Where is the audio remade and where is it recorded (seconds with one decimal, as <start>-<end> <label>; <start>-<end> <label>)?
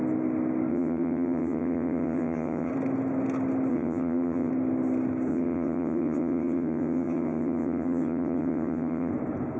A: 0.0-0.7 recorded; 0.7-2.7 remade; 2.7-3.7 recorded; 3.7-4.5 remade; 4.5-5.3 recorded; 5.3-9.1 remade; 9.1-9.6 recorded